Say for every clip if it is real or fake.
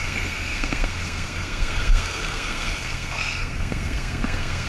fake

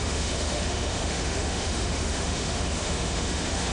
fake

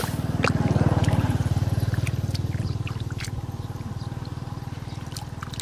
real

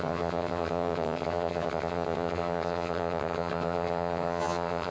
fake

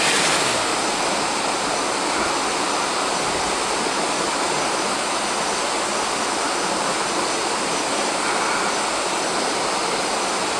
real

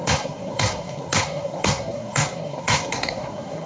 fake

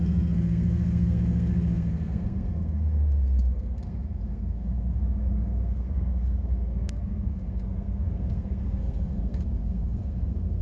fake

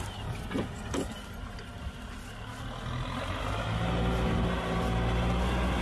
real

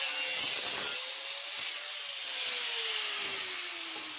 real